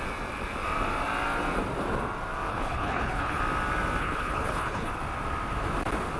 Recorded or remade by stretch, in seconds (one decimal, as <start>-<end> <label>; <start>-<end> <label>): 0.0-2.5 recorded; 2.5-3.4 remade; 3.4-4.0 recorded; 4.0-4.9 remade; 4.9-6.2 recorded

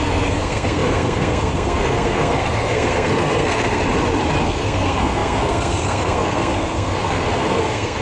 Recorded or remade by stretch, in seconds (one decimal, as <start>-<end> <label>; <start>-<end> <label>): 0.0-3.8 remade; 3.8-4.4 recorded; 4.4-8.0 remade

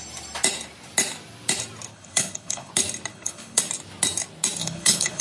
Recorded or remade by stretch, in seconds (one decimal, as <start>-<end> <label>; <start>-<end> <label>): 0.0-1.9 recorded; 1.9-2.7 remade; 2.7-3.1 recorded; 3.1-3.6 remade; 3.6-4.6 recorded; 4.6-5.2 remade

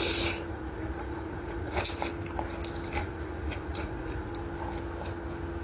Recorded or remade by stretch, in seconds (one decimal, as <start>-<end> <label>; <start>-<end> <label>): 0.0-0.5 recorded; 0.5-1.8 remade; 1.8-3.0 recorded; 3.0-4.3 remade; 4.3-5.6 recorded

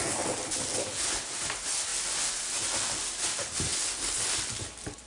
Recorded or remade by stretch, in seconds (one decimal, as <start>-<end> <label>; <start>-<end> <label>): 0.0-5.1 recorded